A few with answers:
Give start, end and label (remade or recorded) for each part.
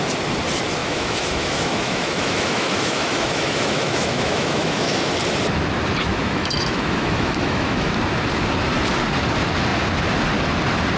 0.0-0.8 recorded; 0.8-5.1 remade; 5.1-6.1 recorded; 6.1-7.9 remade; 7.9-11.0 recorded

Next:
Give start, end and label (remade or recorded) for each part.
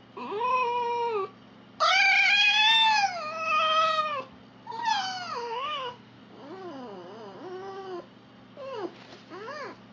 0.0-5.4 recorded; 5.4-6.2 remade; 6.2-9.9 recorded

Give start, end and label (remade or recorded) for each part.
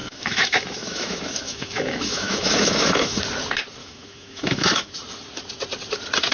0.0-3.2 remade; 3.2-3.8 recorded; 3.8-4.9 remade; 4.9-6.3 recorded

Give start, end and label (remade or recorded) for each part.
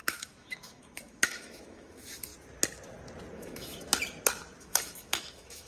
0.0-2.3 remade; 2.3-3.3 recorded; 3.3-3.9 remade; 3.9-4.6 recorded; 4.6-5.7 remade